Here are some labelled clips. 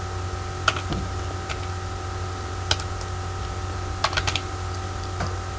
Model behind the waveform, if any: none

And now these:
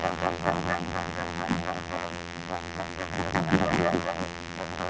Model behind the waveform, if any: vocoder, BigVGAN v2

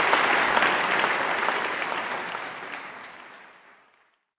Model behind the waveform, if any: none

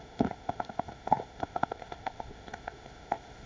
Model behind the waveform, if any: codec, ZipCodec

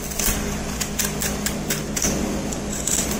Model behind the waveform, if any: none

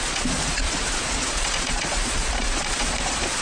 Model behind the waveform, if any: vocoder, Vocos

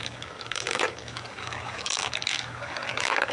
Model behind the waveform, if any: codec, DAC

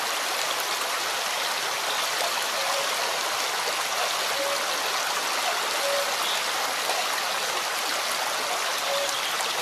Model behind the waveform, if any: none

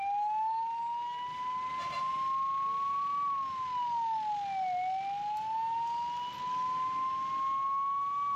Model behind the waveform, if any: none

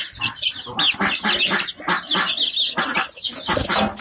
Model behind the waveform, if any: none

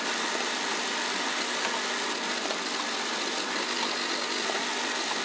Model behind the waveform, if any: none